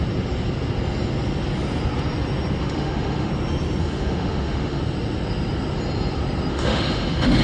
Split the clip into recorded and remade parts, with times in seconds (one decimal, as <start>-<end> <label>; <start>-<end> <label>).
0.0-2.6 recorded; 2.6-3.3 remade; 3.3-3.8 recorded; 3.8-4.8 remade; 4.8-6.5 recorded; 6.5-7.4 remade

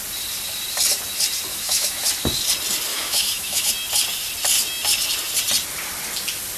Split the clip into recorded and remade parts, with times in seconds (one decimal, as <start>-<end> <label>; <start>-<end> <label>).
0.0-1.5 recorded; 1.5-2.0 remade; 2.0-2.9 recorded; 2.9-3.7 remade; 3.7-6.6 recorded

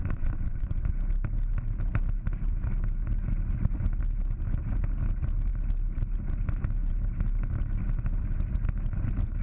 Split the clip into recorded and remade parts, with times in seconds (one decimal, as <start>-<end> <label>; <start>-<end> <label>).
0.0-0.9 remade; 0.9-9.4 recorded